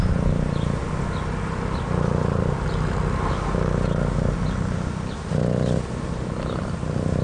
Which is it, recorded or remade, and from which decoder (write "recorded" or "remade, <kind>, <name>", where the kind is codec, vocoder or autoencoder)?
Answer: recorded